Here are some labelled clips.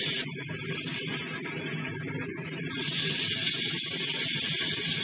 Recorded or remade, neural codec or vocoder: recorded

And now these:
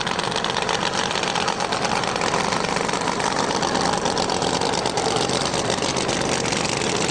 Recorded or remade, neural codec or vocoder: remade, vocoder, BigVGAN v2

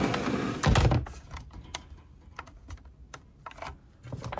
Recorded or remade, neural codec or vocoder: recorded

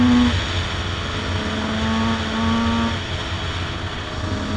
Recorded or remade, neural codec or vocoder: recorded